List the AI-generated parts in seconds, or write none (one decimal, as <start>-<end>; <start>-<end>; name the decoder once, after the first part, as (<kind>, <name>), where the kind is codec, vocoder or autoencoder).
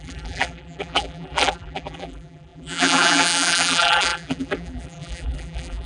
0.0-5.9 (vocoder, BigVGAN v2)